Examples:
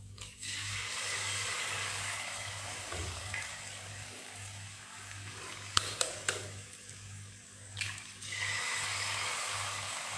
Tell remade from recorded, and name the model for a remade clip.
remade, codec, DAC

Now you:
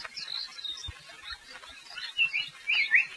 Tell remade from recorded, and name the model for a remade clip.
recorded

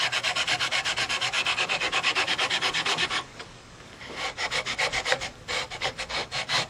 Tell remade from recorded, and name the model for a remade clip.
remade, codec, DAC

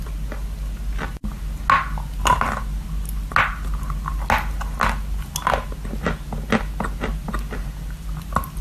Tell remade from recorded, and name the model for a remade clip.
recorded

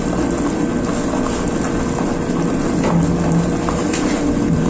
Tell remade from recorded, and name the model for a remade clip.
recorded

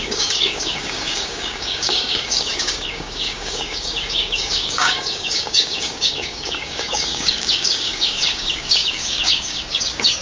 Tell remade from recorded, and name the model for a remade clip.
remade, codec, DAC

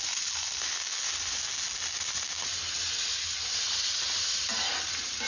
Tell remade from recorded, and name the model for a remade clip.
recorded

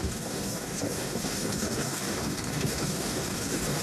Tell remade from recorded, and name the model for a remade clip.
remade, codec, DAC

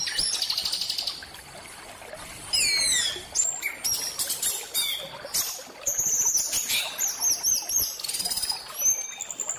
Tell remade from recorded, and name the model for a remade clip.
recorded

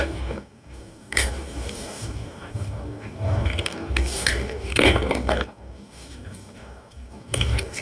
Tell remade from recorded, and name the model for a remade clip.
remade, codec, DAC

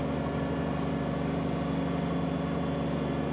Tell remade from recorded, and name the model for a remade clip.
recorded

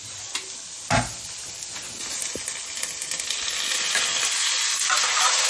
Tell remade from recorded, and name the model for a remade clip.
recorded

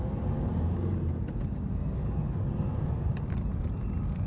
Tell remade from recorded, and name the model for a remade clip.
recorded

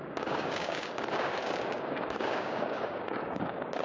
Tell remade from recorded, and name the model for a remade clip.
remade, codec, DAC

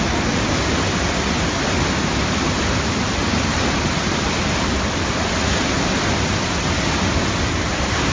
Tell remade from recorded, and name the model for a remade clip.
recorded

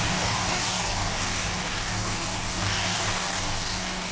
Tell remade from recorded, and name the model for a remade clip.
remade, codec, DAC